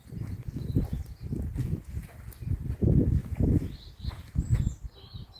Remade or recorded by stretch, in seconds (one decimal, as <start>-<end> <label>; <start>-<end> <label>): 0.0-3.2 recorded; 3.2-3.8 remade; 3.8-5.4 recorded